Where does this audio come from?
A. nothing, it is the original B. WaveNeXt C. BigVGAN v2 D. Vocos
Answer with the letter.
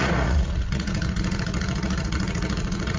D